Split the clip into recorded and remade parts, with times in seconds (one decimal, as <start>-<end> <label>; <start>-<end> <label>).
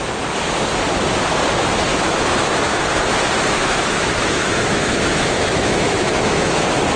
0.0-1.9 recorded; 1.9-2.8 remade; 2.8-3.6 recorded; 3.6-6.6 remade; 6.6-7.0 recorded